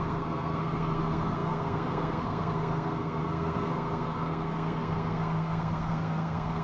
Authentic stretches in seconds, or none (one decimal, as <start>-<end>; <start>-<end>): none